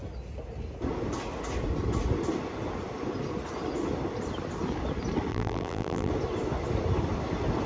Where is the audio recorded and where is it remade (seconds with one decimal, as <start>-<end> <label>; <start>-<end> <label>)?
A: 0.0-5.3 recorded; 5.3-6.1 remade; 6.1-7.7 recorded